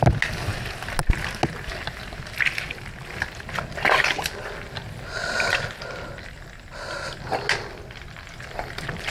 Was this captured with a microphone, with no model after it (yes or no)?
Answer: yes